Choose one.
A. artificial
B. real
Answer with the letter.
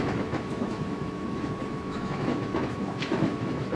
A